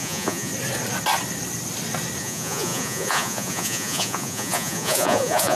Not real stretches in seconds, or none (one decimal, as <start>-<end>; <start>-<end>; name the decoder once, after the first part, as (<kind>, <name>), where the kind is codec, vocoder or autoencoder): 0.0-0.5 (vocoder, Vocos); 2.2-5.5

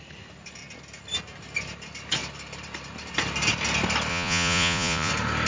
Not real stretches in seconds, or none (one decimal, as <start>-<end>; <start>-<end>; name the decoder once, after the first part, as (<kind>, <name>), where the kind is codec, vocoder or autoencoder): 4.1-5.1 (vocoder, Vocos)

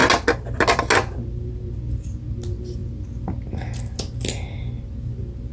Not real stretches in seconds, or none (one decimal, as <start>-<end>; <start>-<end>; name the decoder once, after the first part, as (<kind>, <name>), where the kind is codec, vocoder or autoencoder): none

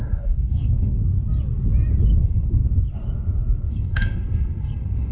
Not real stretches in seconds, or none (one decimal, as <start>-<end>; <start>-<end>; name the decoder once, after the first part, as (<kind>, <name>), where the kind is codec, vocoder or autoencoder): 0.0-1.0 (codec, SNAC); 2.2-2.6; 3.7-5.1

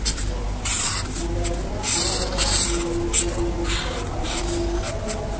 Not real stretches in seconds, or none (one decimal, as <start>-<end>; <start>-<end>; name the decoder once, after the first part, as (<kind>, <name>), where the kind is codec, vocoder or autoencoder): none

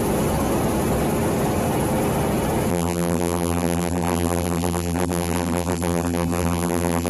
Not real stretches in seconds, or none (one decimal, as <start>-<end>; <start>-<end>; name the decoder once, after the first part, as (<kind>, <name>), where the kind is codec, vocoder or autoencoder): 2.7-7.1 (vocoder, BigVGAN v2)

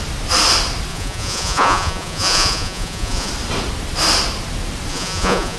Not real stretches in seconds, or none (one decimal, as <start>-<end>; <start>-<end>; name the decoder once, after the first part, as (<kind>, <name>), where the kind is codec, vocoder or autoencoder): 0.9-3.3 (vocoder, Vocos); 4.9-5.6

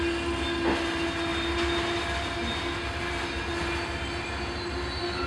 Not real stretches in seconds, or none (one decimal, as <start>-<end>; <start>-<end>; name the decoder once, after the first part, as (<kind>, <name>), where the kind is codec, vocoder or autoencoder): none